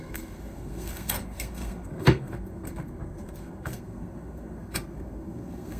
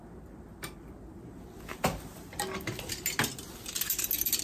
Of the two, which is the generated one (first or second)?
first